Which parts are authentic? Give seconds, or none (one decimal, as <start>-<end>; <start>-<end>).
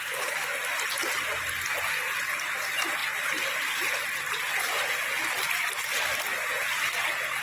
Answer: 0.0-7.4